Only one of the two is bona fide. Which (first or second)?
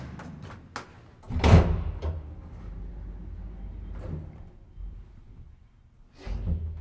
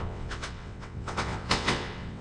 first